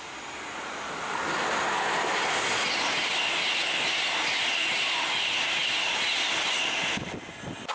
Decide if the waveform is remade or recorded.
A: recorded